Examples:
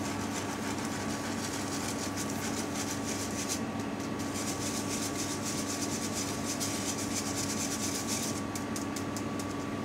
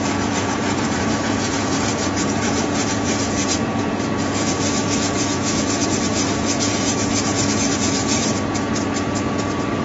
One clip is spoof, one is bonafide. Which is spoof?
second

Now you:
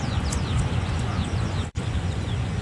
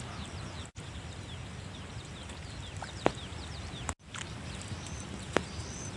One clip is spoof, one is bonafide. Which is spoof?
first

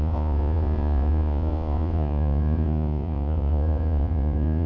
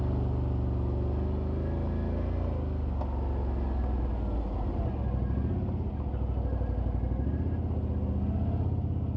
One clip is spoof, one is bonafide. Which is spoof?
first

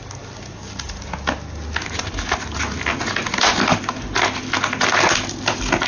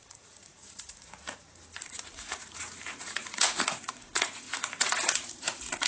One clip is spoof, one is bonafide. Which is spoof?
second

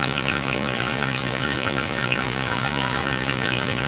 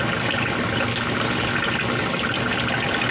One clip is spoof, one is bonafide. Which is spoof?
first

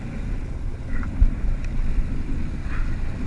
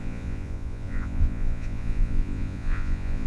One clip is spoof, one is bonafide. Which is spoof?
second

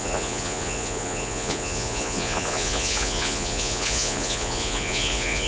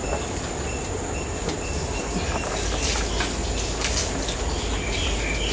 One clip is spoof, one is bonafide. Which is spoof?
first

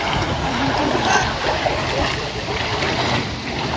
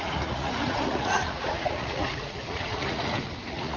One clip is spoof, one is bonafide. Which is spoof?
second